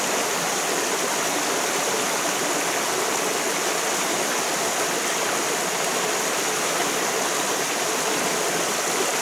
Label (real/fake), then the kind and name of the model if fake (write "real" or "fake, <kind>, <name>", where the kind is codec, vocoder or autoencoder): real